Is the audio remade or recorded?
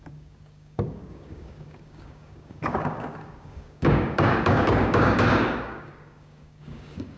remade